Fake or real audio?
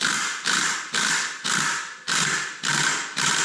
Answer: real